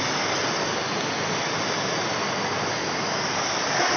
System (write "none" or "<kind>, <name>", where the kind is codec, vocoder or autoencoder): none